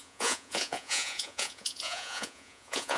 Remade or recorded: remade